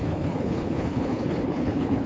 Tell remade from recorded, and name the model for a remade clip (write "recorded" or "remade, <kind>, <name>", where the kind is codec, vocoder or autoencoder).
remade, codec, HILCodec